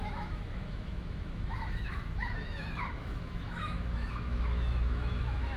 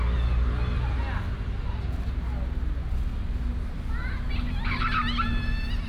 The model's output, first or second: first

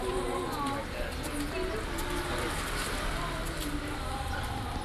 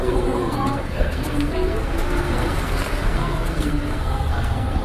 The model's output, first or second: second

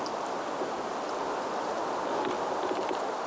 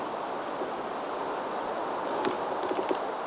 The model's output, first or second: second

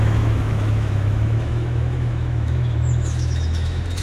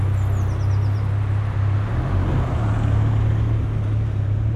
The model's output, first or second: first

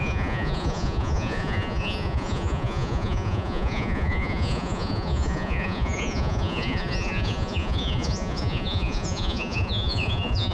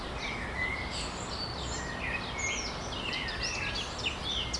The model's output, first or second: first